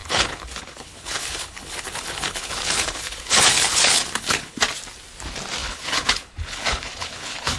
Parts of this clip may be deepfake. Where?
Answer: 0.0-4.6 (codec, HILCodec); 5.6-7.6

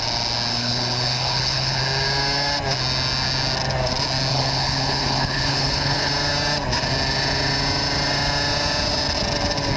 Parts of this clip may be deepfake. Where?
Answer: 0.5-1.8 (codec, HILCodec); 4.3-6.1